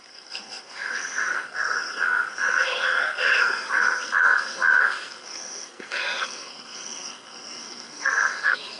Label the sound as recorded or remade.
remade